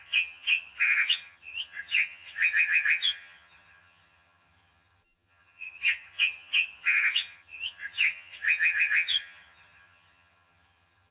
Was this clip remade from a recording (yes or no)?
yes